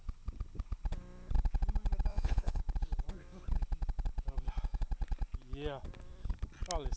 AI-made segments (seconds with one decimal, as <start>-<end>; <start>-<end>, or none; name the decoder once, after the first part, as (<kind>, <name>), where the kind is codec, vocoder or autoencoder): 2.1-2.6 (vocoder, Vocos)